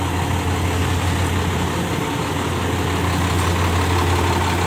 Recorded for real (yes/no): yes